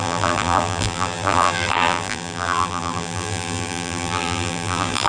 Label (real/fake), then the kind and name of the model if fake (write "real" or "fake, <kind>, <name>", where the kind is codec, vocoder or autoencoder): fake, vocoder, BigVGAN v2